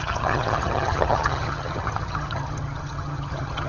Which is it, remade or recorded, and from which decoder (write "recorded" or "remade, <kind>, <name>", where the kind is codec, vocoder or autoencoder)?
remade, vocoder, HiFi-GAN